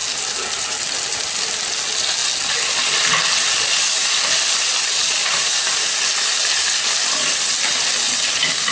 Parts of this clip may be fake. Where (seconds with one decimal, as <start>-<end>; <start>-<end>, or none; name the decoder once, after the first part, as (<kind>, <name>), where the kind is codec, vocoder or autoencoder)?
5.2-6.0 (vocoder, BigVGAN v2)